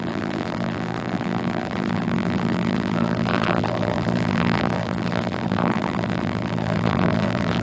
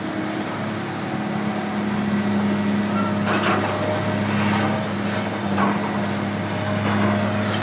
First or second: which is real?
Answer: second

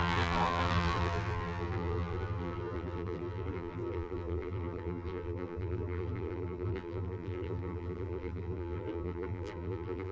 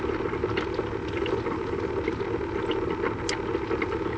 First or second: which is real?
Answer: second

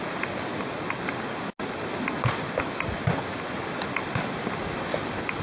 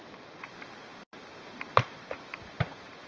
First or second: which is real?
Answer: first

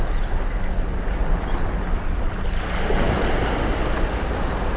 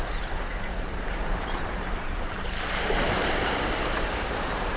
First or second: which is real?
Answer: first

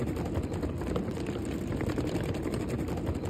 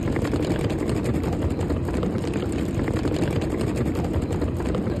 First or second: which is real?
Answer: first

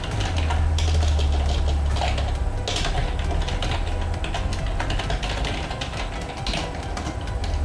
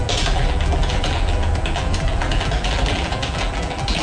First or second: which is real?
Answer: first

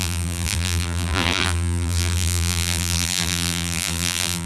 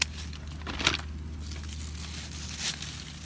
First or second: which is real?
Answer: second